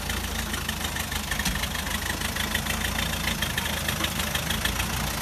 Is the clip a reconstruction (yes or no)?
no